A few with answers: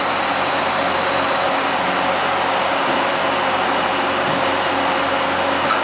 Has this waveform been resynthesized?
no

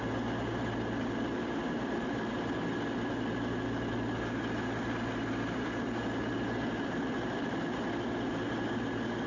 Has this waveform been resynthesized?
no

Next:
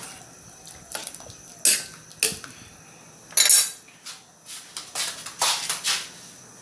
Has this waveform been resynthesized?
no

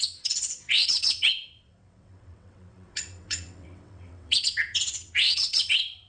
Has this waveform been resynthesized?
yes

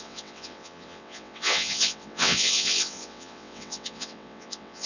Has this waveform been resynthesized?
yes